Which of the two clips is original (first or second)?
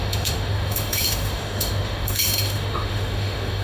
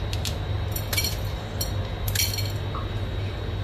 second